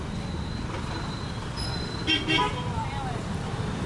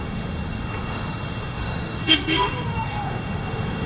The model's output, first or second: second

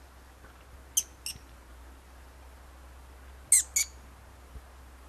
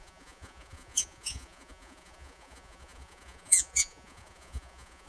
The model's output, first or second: second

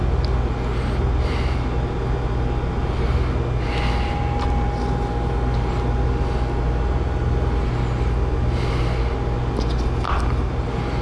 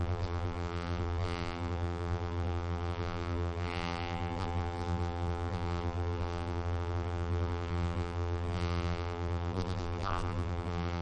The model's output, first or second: second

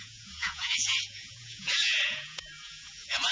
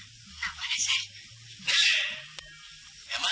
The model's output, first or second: first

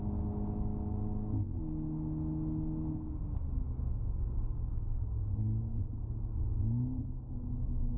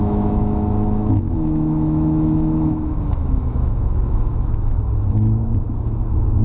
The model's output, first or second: second